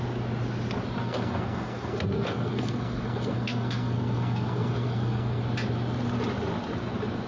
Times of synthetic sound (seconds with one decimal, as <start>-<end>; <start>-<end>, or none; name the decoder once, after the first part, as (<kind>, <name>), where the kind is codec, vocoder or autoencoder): 1.0-5.4 (codec, SNAC)